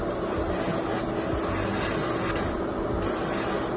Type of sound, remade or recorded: recorded